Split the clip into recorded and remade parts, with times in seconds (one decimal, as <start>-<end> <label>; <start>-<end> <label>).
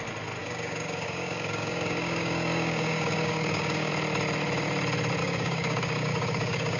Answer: 0.0-0.4 recorded; 0.4-3.9 remade; 3.9-5.2 recorded; 5.2-6.8 remade